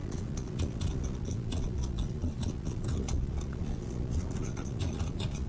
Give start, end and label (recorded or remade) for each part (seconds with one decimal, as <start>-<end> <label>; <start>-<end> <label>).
0.0-5.5 remade